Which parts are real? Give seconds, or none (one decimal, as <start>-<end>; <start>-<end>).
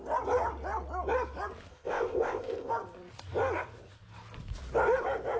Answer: 0.0-1.7; 2.7-5.4